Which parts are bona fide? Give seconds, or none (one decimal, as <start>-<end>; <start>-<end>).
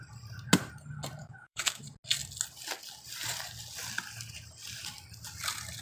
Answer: 0.0-1.2; 1.8-5.8